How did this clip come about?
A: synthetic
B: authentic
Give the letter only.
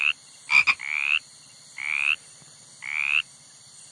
B